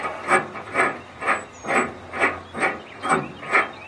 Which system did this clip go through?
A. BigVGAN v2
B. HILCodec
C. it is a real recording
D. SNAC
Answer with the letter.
A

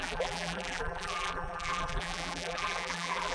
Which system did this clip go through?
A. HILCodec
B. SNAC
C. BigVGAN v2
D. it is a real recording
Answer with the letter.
C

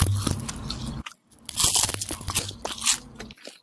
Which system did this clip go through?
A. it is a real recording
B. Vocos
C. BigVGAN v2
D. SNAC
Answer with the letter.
A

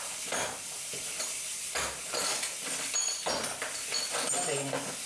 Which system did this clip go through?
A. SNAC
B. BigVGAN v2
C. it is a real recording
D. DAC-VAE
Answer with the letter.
C